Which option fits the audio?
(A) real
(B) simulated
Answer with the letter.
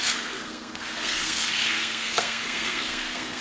B